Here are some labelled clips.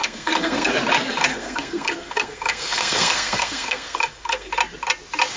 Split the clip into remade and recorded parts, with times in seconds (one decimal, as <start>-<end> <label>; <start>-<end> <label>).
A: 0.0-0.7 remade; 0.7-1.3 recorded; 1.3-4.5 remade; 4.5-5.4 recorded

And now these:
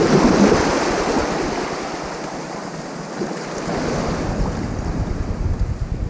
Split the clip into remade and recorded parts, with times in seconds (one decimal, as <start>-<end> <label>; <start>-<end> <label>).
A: 0.0-6.1 recorded

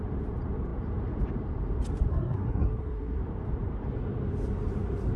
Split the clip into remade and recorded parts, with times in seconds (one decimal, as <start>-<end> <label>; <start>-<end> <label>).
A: 0.0-2.1 recorded; 2.1-3.2 remade; 3.2-5.2 recorded